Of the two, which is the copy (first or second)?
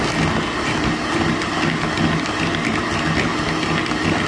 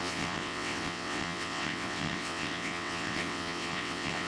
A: second